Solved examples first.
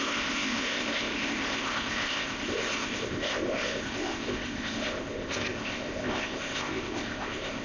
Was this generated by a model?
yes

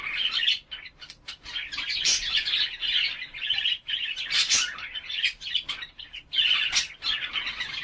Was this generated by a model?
no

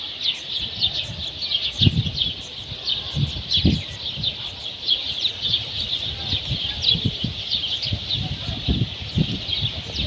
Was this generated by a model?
no